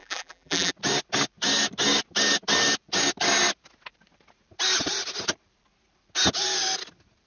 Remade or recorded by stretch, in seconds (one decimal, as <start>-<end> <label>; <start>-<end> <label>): 0.0-0.7 remade; 0.7-7.3 recorded

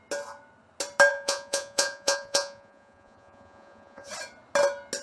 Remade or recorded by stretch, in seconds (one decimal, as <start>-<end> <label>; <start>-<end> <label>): 0.0-1.1 recorded; 1.1-4.1 remade; 4.1-5.0 recorded